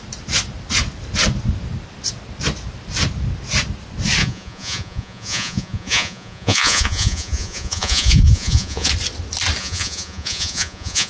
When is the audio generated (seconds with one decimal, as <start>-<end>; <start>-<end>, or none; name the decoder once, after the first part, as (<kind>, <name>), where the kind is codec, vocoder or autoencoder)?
4.2-8.9 (vocoder, Vocos); 9.6-11.1